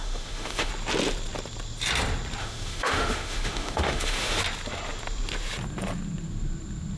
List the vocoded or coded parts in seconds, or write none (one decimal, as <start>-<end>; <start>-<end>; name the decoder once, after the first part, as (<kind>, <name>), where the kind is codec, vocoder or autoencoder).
0.0-0.7 (autoencoder, DAC-VAE); 2.4-4.4